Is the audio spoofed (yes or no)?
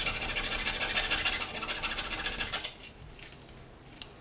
no